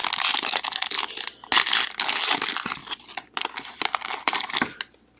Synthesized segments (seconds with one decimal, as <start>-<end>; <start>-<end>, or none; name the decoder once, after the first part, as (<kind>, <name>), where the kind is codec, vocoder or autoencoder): none